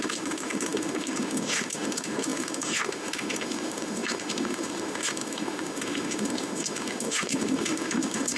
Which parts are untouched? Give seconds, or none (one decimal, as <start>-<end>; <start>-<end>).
none